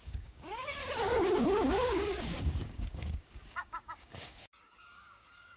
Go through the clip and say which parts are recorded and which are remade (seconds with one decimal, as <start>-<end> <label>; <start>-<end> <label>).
0.0-0.8 remade; 0.8-1.3 recorded; 1.3-5.6 remade